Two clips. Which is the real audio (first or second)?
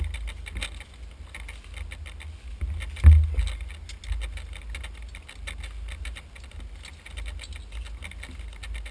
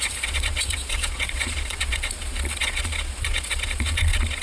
first